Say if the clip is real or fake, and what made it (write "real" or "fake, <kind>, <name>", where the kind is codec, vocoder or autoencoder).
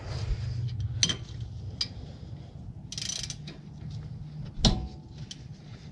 real